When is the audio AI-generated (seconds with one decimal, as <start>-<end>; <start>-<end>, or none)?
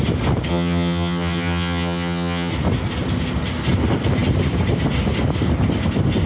0.5-2.5